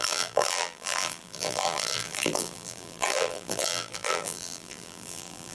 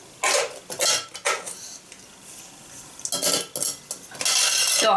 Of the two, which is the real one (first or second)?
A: second